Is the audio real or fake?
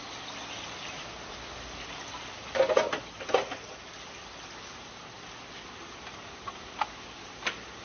real